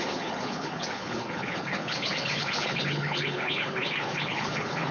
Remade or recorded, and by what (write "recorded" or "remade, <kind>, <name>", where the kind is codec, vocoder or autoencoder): remade, codec, HILCodec